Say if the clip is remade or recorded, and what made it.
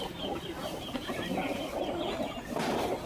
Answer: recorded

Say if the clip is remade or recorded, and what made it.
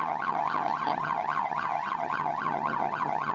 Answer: remade, vocoder, HiFi-GAN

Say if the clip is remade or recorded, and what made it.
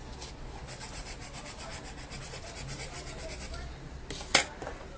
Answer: recorded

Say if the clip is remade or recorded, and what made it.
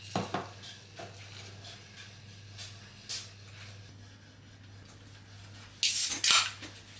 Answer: recorded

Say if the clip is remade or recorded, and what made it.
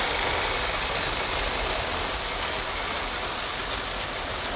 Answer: recorded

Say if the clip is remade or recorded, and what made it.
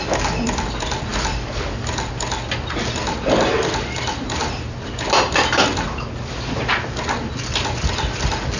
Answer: recorded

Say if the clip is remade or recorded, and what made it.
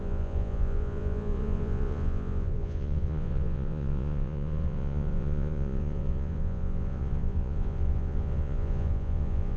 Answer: remade, vocoder, Vocos